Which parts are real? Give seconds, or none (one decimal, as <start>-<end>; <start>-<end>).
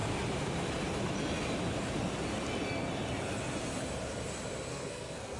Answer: 0.0-4.7